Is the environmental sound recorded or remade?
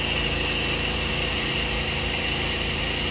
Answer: recorded